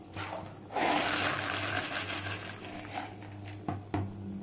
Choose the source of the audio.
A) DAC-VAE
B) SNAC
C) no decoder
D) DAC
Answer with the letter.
C